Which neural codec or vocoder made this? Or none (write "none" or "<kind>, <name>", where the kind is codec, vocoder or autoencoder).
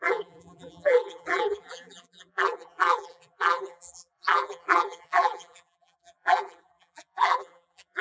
vocoder, BigVGAN v2